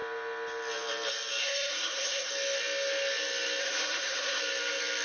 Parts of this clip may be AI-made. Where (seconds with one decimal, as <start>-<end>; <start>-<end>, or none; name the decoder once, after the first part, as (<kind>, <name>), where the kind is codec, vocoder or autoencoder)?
1.4-2.3 (codec, SNAC); 3.6-4.4